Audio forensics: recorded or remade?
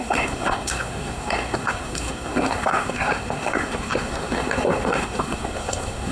remade